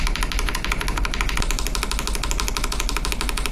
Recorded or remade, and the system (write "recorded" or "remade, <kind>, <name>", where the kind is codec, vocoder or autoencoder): recorded